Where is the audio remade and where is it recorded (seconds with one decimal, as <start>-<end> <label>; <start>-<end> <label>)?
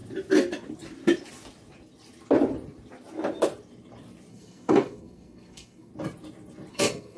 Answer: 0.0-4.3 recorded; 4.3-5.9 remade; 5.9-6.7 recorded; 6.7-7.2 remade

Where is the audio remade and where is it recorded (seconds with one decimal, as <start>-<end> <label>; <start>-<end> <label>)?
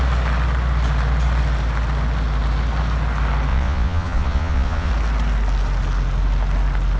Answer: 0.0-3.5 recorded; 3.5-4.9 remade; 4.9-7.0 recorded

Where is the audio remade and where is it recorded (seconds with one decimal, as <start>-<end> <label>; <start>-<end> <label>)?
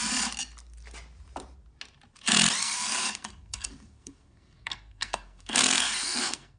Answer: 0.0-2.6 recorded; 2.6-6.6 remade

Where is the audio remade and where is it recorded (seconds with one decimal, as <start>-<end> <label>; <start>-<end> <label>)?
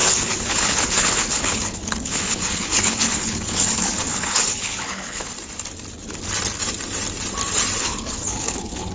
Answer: 0.0-5.3 remade; 5.3-7.8 recorded; 7.8-8.9 remade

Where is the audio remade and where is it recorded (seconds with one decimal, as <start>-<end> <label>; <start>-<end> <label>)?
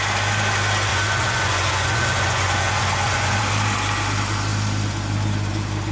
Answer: 0.0-0.9 recorded; 0.9-3.5 remade; 3.5-5.9 recorded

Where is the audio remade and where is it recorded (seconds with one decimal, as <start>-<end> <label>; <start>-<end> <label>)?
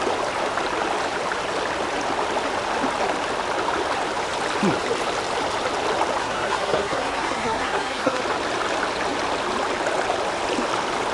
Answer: 0.0-6.2 recorded; 6.2-8.2 remade; 8.2-11.1 recorded